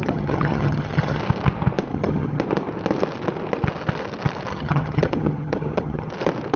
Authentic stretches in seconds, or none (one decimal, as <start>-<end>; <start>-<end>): 1.2-1.9; 2.4-4.5; 6.1-6.6